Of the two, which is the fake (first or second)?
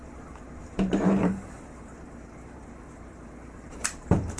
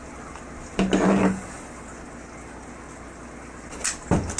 first